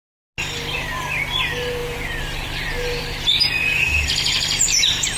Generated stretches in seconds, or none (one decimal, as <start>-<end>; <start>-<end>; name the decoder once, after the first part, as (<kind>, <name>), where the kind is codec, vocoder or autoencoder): 1.8-5.2 (vocoder, BigVGAN v2)